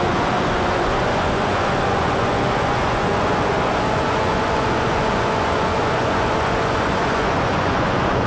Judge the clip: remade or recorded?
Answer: remade